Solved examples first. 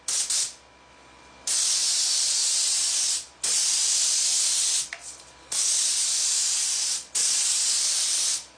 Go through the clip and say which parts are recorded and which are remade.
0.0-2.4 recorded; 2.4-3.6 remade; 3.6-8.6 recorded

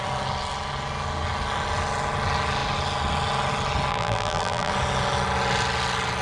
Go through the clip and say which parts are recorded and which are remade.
0.0-3.9 recorded; 3.9-4.7 remade; 4.7-6.2 recorded

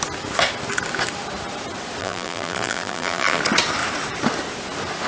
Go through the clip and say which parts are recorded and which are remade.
0.0-2.0 recorded; 2.0-3.4 remade; 3.4-5.1 recorded

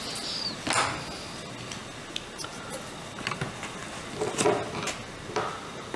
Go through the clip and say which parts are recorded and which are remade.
0.0-6.0 recorded